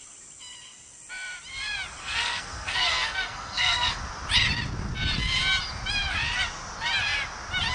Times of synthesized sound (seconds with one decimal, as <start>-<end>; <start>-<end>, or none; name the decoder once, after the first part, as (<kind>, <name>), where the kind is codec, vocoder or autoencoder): 2.0-4.0 (codec, SNAC)